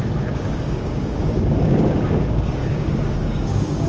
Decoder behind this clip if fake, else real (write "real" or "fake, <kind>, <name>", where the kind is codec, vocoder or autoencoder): fake, codec, DAC